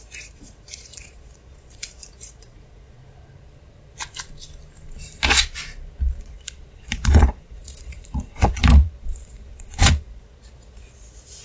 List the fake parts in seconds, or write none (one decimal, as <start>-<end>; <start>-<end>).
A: 0.0-3.0; 6.2-11.4